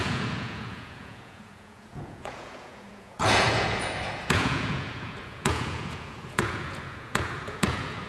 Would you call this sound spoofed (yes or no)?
yes